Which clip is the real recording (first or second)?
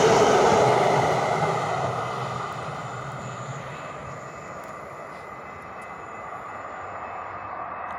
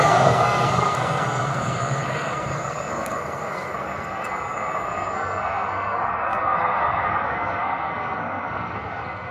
first